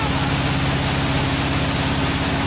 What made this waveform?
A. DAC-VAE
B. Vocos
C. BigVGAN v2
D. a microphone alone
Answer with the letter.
D